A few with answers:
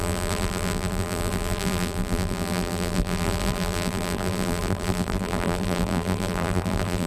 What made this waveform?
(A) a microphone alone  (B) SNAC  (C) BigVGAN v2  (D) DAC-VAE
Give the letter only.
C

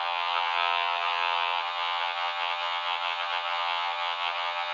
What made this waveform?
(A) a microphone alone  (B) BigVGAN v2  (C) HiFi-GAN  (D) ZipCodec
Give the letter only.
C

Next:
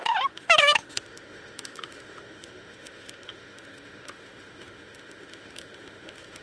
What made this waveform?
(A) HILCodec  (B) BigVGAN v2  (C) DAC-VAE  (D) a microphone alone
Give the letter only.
C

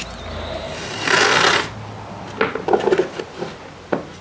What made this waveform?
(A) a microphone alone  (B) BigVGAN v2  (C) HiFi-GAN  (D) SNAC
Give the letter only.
A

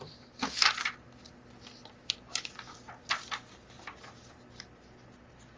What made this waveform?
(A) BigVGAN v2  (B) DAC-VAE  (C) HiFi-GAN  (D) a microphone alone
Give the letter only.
D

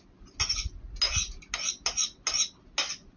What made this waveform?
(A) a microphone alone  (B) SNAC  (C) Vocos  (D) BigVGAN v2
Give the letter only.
A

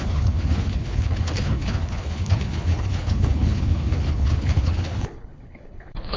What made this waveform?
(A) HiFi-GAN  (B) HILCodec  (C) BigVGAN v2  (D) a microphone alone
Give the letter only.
B